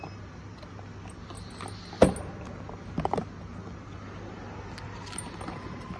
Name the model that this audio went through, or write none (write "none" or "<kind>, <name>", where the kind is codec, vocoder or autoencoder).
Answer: none